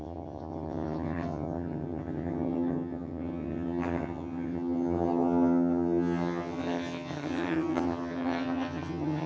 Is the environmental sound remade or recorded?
remade